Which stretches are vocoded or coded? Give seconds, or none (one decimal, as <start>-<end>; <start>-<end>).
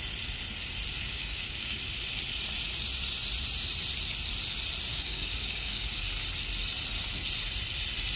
1.1-1.8; 4.9-6.0